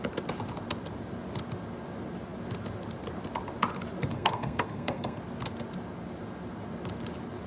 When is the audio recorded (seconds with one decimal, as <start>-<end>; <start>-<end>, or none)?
0.0-4.1; 5.2-7.5